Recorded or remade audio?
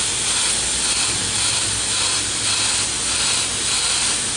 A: recorded